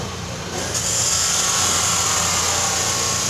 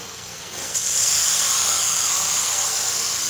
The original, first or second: first